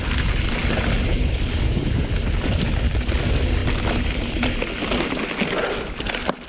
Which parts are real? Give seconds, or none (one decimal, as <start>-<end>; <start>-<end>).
0.0-6.5